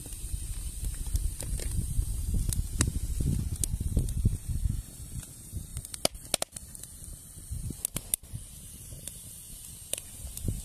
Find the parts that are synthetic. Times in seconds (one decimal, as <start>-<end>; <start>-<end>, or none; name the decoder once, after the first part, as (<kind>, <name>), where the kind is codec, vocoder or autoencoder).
none